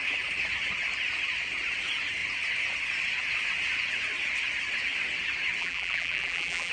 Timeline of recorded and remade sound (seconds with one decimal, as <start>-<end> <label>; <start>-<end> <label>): 0.0-5.6 recorded; 5.6-6.7 remade